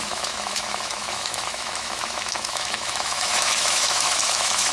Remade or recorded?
remade